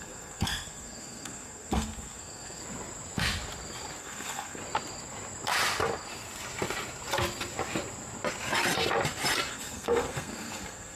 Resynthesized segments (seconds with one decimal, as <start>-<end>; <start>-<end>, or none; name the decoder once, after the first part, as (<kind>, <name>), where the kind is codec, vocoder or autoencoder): 0.0-2.6 (codec, SNAC); 4.0-4.6; 9.5-11.0

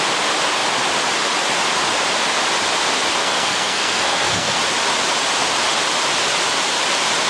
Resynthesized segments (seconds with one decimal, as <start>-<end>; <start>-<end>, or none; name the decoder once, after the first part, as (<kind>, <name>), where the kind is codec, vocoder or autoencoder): 3.2-4.6 (codec, SNAC)

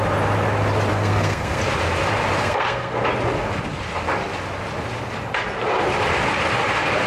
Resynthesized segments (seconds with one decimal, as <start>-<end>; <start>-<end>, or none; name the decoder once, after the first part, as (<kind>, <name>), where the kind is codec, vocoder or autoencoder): 0.9-1.6 (codec, SNAC); 2.4-3.0

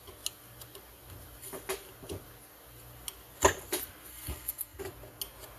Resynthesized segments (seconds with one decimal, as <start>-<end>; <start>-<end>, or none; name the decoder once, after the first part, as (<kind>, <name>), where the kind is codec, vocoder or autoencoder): 4.1-4.8 (codec, SNAC)

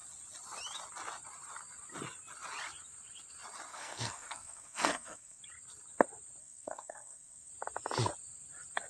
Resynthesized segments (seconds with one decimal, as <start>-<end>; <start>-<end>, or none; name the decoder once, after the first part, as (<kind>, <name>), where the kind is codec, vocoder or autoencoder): 3.7-5.4 (codec, SNAC); 6.4-7.5

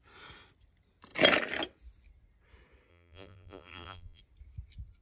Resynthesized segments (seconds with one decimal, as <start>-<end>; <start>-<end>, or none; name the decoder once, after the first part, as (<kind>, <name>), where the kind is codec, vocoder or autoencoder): 2.9-4.2 (vocoder, BigVGAN v2)